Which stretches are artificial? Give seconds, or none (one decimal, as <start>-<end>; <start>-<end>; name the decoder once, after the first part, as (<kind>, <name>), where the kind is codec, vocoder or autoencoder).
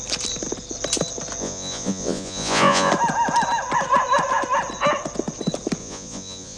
1.4-2.9 (vocoder, Vocos); 5.8-6.6